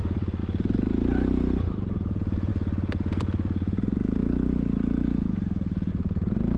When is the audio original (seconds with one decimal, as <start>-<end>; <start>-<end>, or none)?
0.0-6.6